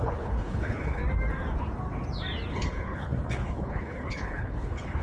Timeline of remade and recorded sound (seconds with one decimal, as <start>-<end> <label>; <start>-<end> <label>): 0.0-1.0 remade; 1.0-2.5 recorded; 2.5-5.0 remade